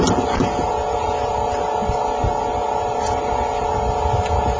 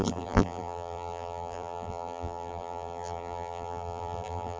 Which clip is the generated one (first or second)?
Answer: second